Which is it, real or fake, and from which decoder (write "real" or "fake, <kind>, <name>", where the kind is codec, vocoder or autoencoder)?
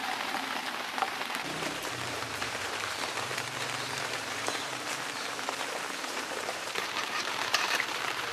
fake, vocoder, BigVGAN v2